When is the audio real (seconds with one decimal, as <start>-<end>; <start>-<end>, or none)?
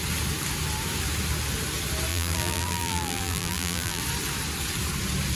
0.0-2.1; 4.0-5.3